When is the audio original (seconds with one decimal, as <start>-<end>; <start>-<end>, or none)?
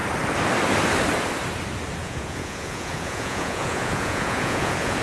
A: 0.0-2.0